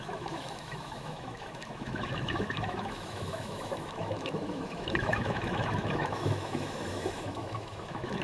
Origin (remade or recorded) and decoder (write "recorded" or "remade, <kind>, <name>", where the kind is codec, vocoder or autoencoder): remade, autoencoder, DAC-VAE